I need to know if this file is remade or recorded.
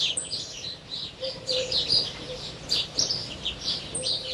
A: remade